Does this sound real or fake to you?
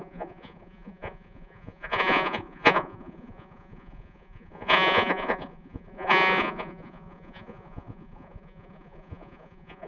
fake